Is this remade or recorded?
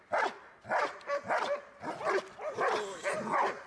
recorded